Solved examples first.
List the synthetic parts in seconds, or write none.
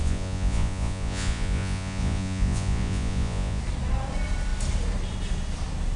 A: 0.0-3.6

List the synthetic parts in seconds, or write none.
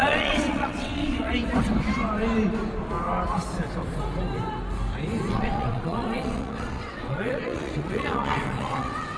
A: 0.0-1.3; 5.3-9.2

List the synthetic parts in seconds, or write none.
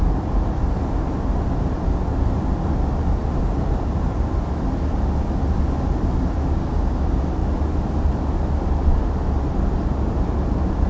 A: none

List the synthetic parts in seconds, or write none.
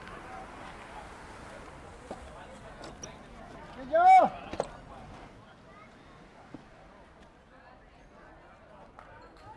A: none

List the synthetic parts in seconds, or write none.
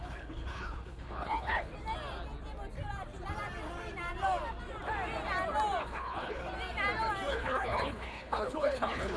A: 0.0-1.7; 5.8-6.4; 7.3-9.2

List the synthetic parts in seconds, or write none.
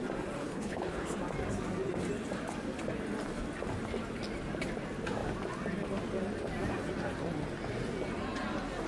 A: 0.4-1.2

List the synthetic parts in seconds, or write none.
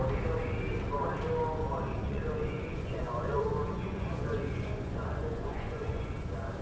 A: 2.1-6.1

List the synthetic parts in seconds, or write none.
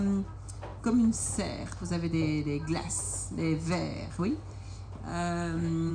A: 5.1-5.9